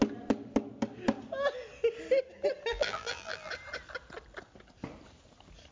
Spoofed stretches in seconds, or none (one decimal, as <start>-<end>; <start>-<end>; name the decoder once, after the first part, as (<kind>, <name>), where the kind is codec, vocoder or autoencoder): 2.7-3.5 (vocoder, BigVGAN v2)